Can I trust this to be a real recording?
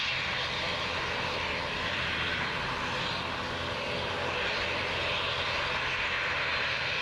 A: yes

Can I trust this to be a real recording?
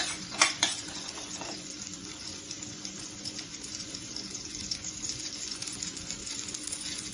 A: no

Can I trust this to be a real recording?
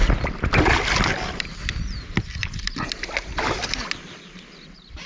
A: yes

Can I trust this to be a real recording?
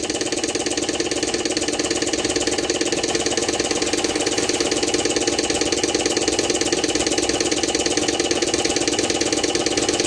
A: yes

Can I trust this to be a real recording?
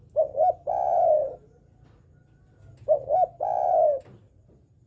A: yes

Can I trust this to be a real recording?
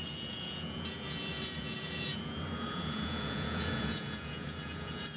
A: no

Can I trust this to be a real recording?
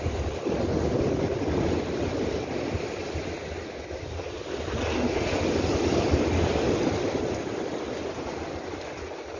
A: yes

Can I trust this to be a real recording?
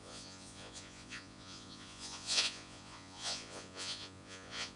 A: no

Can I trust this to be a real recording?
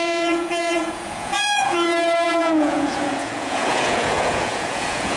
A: no